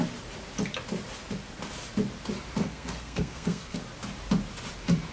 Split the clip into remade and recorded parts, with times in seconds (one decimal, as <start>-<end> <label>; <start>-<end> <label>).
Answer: 0.0-2.6 recorded; 2.6-3.8 remade; 3.8-5.1 recorded

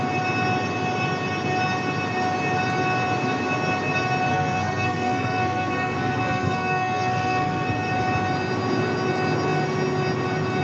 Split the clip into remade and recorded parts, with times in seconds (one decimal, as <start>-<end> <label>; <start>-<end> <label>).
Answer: 0.0-4.3 recorded; 4.3-7.9 remade; 7.9-10.6 recorded

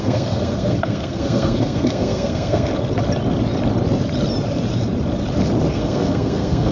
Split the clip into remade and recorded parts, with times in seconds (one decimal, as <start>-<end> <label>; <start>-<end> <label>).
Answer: 0.0-2.7 remade; 2.7-5.7 recorded; 5.7-6.7 remade

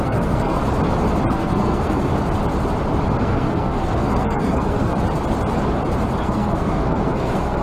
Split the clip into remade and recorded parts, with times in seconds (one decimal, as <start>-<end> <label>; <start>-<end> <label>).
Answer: 0.0-0.6 remade; 0.6-1.3 recorded; 1.3-2.1 remade; 2.1-3.2 recorded; 3.2-4.9 remade; 4.9-6.2 recorded; 6.2-7.6 remade

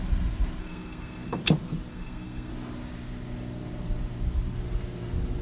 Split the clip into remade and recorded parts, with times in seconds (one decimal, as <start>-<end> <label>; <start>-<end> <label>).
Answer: 0.0-0.6 recorded; 0.6-1.4 remade; 1.4-1.9 recorded; 1.9-2.5 remade; 2.5-5.4 recorded

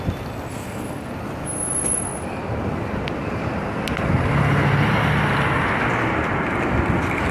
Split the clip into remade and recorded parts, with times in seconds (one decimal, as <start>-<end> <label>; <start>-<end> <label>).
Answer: 0.0-0.5 recorded; 0.5-1.1 remade; 1.1-7.3 recorded

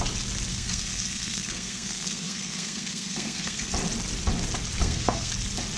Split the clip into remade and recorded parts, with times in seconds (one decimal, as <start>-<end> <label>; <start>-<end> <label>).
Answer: 0.0-0.5 recorded; 0.5-3.7 remade; 3.7-4.8 recorded; 4.8-5.3 remade; 5.3-5.8 recorded